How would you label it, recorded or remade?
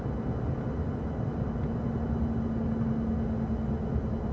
recorded